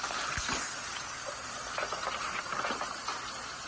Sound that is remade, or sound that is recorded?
recorded